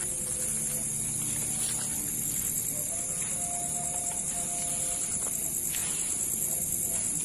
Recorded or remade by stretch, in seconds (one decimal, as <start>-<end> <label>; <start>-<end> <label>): 0.0-7.2 recorded